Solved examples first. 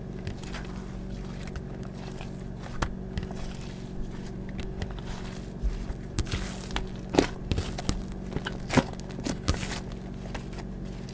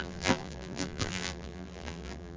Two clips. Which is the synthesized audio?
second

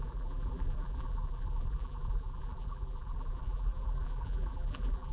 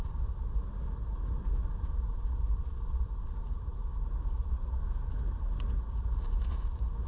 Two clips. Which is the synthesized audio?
first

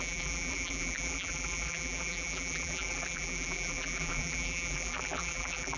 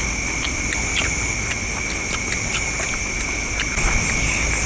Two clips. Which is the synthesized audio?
first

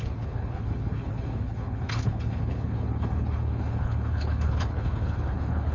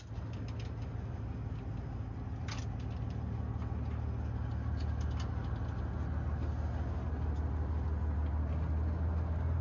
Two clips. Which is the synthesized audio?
first